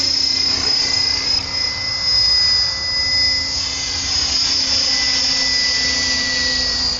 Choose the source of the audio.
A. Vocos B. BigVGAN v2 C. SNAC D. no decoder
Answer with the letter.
D